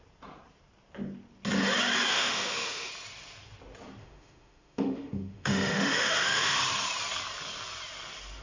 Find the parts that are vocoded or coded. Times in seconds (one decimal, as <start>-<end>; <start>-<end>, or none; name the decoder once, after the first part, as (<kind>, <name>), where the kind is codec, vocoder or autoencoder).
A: 2.1-2.9 (autoencoder, DAC-VAE); 4.0-6.6